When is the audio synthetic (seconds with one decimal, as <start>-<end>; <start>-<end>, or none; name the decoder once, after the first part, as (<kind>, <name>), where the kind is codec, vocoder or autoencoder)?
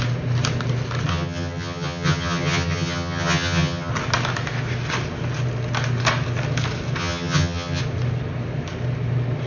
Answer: 1.1-3.9 (vocoder, HiFi-GAN); 7.0-7.8